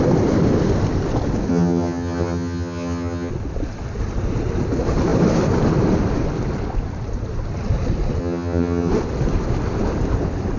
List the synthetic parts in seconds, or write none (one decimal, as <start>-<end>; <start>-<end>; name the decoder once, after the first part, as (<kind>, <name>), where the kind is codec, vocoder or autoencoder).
1.5-3.3 (vocoder, HiFi-GAN); 8.2-8.9